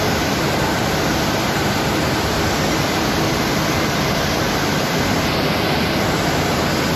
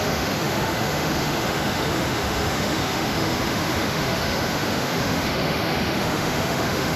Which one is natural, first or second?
first